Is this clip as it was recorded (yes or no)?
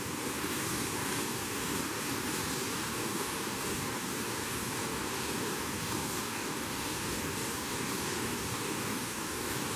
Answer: no